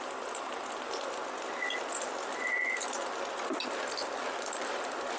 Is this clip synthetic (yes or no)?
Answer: no